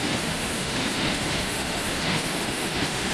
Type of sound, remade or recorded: remade